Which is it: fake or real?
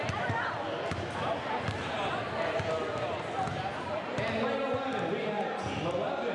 real